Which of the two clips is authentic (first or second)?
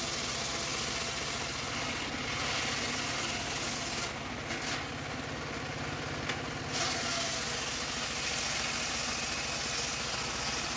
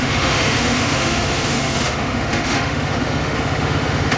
first